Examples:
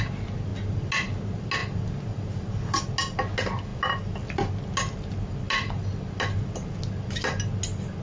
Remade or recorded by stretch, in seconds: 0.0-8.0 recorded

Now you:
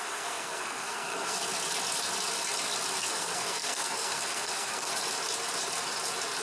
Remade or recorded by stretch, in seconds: 0.0-1.4 remade; 1.4-3.0 recorded; 3.0-4.9 remade; 4.9-6.4 recorded

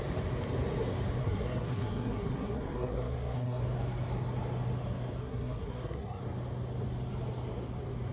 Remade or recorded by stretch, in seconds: 0.0-1.2 recorded; 1.2-3.6 remade; 3.6-5.2 recorded; 5.2-6.2 remade; 6.2-8.1 recorded